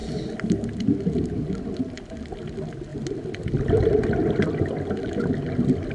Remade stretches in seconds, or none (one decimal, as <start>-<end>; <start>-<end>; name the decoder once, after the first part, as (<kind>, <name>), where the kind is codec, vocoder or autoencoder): none